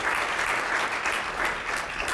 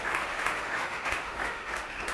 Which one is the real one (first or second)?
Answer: first